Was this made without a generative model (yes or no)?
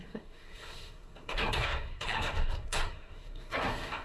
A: no